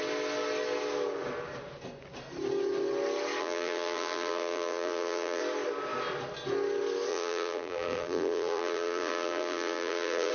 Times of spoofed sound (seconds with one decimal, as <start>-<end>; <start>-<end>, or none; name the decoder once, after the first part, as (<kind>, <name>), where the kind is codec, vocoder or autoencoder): 3.4-5.4 (vocoder, BigVGAN v2); 7.1-10.3